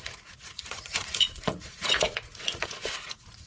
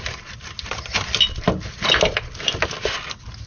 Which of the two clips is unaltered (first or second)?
second